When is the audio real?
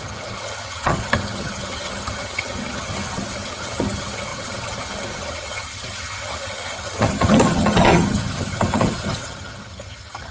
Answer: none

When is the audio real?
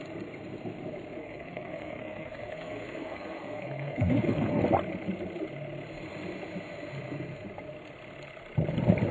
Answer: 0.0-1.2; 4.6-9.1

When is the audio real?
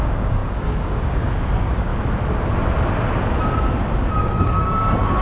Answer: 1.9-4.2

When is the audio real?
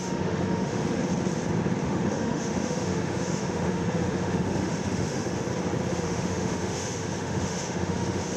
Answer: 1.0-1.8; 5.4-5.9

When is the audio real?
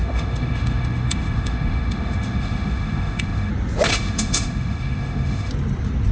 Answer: 3.5-3.9; 5.5-6.1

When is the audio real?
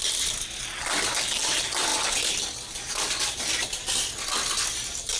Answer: 0.0-5.2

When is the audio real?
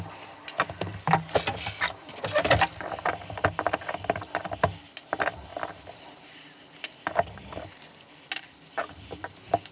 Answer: 0.0-9.7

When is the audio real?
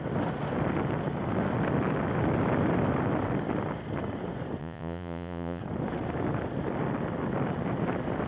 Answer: 0.0-4.6; 5.6-8.3